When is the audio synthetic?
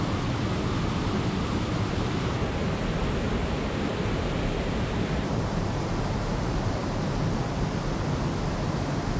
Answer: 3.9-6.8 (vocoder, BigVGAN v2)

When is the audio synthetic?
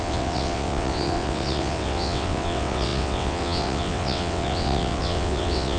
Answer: 0.0-5.8 (vocoder, WaveNeXt)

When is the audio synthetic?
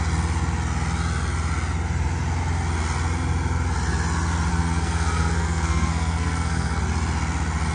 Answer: 4.5-6.8 (codec, SNAC)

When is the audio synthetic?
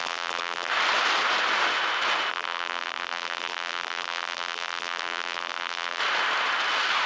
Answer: 0.0-0.7 (vocoder, BigVGAN v2); 2.3-6.0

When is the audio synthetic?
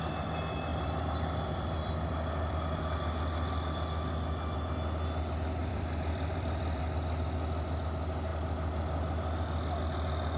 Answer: 0.7-2.8 (vocoder, BigVGAN v2); 5.6-6.8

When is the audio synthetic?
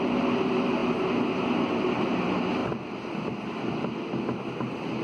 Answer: none